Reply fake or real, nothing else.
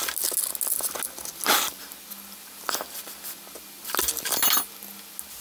real